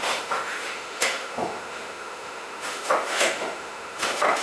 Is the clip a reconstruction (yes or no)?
yes